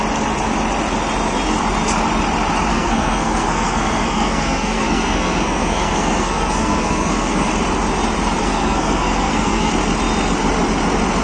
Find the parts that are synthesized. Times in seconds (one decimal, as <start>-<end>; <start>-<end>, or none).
2.7-7.5; 8.4-9.7